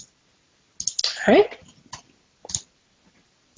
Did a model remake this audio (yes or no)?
no